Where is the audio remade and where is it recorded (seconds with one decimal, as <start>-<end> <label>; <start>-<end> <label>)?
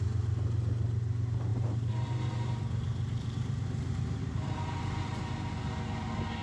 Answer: 0.0-1.5 recorded; 1.5-5.3 remade; 5.3-6.4 recorded